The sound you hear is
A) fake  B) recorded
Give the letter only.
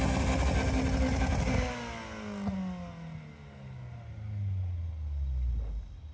B